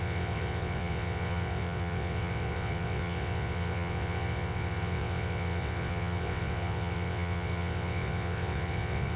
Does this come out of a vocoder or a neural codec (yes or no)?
yes